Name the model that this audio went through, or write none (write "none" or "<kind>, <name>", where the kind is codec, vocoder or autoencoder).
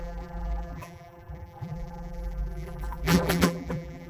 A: vocoder, BigVGAN v2